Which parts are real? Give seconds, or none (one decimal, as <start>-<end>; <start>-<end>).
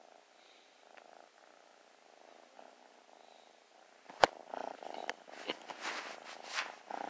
0.0-7.1